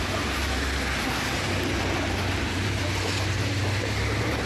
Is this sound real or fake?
real